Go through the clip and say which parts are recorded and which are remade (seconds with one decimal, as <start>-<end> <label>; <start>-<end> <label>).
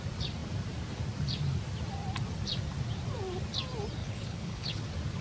0.0-4.0 recorded; 4.0-4.8 remade; 4.8-5.2 recorded